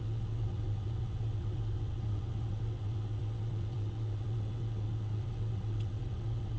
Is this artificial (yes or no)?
yes